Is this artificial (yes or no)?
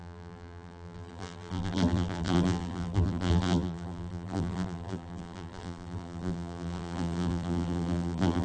yes